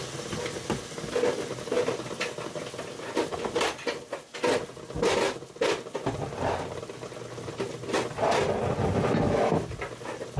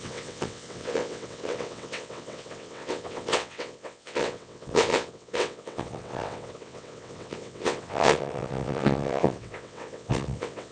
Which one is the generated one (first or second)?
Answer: second